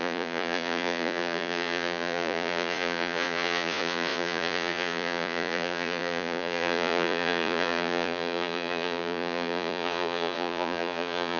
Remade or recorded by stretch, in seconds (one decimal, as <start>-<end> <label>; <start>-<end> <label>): 0.0-11.4 remade